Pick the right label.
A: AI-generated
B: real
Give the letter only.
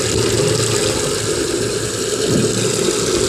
B